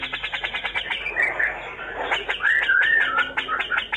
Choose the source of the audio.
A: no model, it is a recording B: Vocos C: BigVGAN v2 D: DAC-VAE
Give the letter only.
A